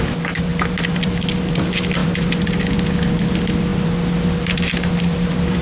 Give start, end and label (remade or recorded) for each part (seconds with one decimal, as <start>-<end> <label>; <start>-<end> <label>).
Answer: 0.0-5.6 recorded